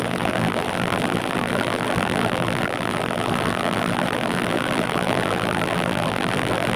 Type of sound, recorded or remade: remade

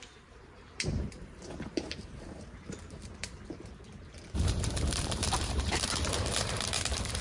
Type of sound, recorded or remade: remade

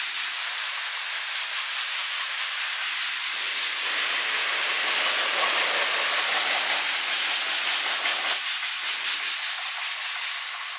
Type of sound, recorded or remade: recorded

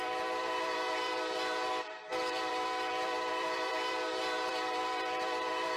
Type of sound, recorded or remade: remade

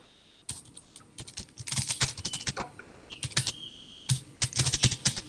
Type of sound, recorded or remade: recorded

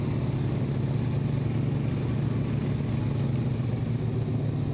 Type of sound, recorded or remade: recorded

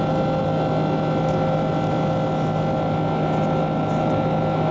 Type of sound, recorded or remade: recorded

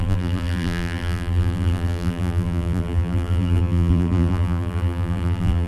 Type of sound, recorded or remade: remade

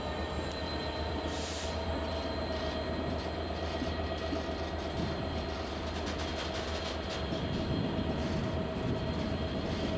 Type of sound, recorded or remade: recorded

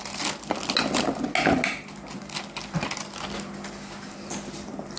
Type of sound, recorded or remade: recorded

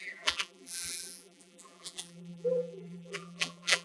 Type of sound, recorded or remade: remade